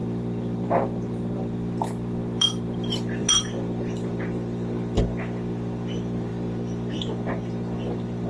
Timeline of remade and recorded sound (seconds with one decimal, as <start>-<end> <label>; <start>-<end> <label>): 0.0-5.0 remade; 5.0-6.3 recorded; 6.3-7.0 remade; 7.0-8.3 recorded